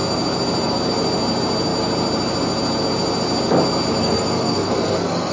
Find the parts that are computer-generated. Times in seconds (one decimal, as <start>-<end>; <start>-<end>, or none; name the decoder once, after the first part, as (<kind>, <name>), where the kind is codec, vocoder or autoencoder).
4.0-5.3 (codec, SNAC)